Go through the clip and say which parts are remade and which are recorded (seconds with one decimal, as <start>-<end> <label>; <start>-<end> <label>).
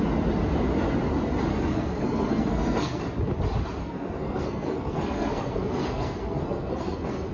0.0-1.5 recorded; 1.5-3.0 remade; 3.0-3.8 recorded; 3.8-7.3 remade